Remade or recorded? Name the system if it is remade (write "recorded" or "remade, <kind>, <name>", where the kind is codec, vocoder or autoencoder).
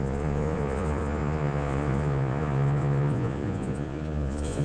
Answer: remade, vocoder, Vocos